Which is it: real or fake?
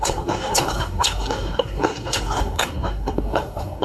fake